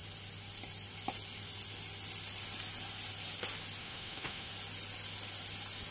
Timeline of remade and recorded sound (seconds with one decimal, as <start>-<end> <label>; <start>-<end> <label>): 0.0-3.8 recorded; 3.8-4.5 remade; 4.5-5.9 recorded